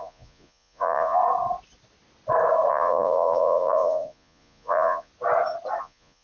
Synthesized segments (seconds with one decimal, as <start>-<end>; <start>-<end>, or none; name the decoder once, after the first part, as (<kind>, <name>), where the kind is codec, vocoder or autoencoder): 0.0-1.2 (vocoder, Vocos); 2.7-5.1; 5.8-6.2